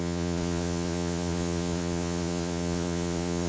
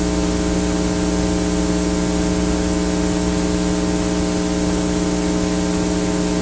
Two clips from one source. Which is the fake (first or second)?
first